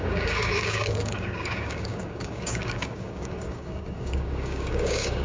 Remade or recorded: remade